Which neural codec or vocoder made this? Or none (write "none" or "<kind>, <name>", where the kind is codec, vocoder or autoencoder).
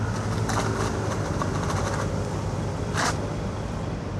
none